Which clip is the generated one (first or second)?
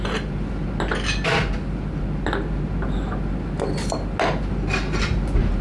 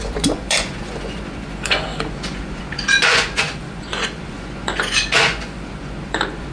second